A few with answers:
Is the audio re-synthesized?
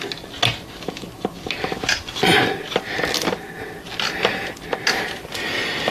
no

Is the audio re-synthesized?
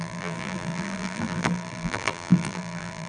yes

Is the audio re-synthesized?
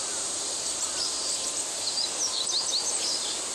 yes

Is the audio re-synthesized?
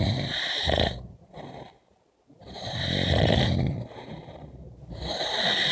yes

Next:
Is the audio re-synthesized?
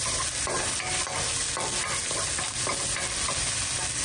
no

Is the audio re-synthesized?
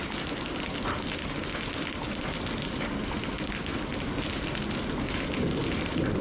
yes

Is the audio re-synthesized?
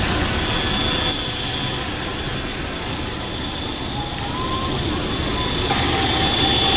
no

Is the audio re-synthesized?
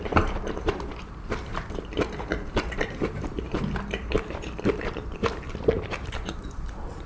yes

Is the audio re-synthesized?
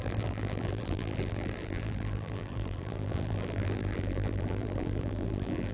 yes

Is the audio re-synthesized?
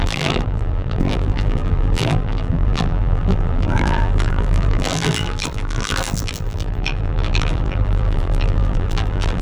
yes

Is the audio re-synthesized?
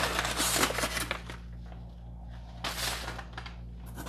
no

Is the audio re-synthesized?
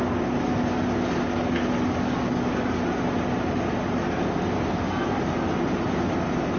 no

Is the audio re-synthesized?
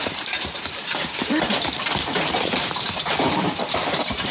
yes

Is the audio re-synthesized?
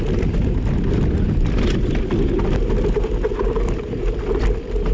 yes